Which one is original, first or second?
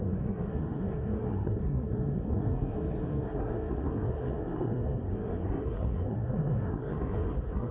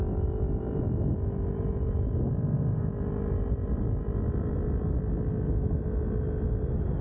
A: second